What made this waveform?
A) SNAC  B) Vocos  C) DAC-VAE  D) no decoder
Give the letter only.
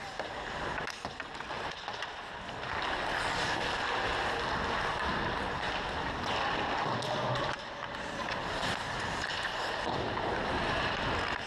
D